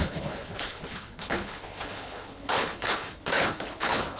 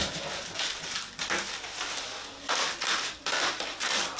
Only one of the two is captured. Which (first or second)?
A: second